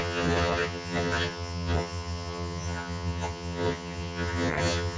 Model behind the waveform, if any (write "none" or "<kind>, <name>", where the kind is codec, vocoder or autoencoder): vocoder, HiFi-GAN